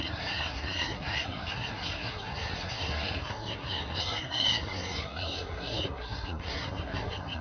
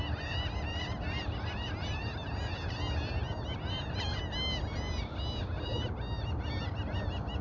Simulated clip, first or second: first